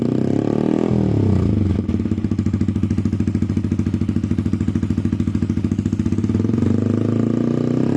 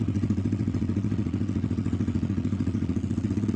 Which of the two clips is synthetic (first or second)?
second